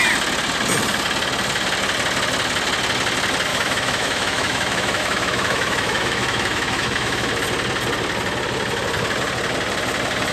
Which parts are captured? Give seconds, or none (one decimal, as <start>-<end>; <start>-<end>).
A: 0.0-3.5; 7.3-10.3

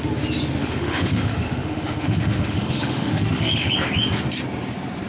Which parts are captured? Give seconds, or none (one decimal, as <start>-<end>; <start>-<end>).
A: 0.0-0.6; 3.7-5.1

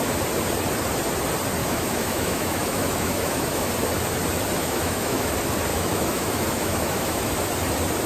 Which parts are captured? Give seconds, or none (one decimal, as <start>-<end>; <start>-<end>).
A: 0.0-1.6; 3.7-4.6; 5.3-5.7; 7.2-8.1

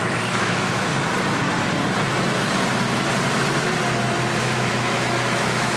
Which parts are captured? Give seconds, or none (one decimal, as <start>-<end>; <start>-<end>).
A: 0.9-4.4